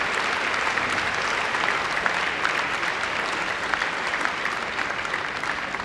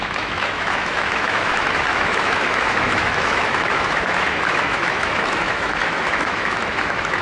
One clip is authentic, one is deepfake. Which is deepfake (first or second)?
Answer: second